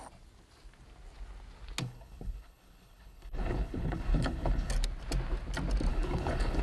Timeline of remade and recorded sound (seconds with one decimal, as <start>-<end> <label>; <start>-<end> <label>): 0.0-1.8 recorded; 1.8-4.7 remade; 4.7-5.9 recorded; 5.9-6.6 remade